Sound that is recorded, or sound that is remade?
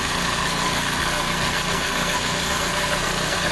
remade